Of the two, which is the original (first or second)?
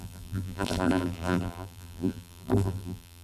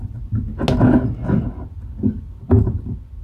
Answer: second